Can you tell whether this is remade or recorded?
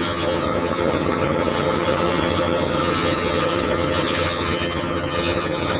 remade